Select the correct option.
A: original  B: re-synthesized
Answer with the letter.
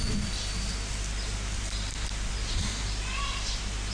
A